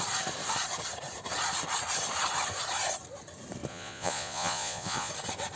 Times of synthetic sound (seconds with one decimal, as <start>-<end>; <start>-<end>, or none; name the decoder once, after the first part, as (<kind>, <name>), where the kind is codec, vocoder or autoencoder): 3.7-5.1 (vocoder, Vocos)